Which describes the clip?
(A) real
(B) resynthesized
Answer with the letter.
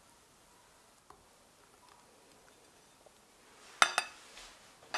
A